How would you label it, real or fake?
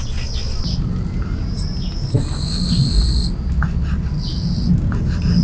real